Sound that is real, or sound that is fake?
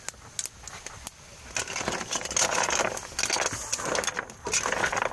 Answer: real